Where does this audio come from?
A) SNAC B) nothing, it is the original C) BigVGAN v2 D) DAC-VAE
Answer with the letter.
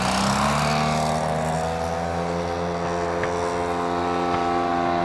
B